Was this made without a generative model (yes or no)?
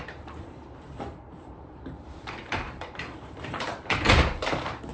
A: no